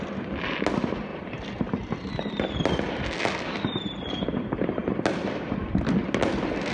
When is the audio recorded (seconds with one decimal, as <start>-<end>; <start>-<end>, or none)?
0.0-6.7